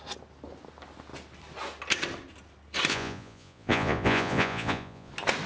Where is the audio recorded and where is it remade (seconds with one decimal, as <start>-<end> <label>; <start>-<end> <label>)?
0.0-2.9 recorded; 2.9-5.1 remade; 5.1-5.5 recorded